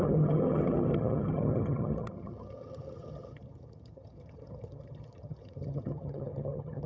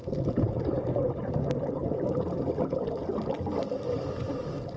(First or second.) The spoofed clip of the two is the first